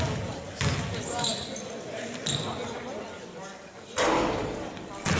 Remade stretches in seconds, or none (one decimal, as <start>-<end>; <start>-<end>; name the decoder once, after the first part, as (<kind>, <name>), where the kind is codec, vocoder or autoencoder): none